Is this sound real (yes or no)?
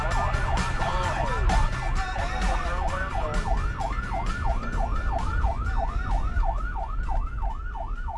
yes